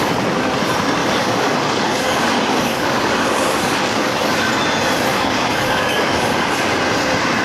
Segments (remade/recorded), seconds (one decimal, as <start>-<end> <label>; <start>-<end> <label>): 0.0-1.0 recorded; 1.0-4.3 remade; 4.3-5.1 recorded; 5.1-6.8 remade; 6.8-7.4 recorded